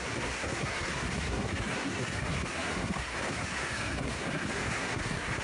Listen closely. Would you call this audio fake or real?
fake